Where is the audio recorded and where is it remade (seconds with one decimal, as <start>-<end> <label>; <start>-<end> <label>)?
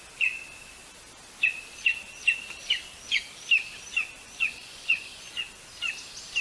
0.0-4.2 recorded; 4.2-5.5 remade; 5.5-6.4 recorded